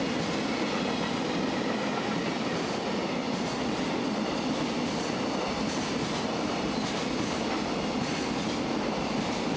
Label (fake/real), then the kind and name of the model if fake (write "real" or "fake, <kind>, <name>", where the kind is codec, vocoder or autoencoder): real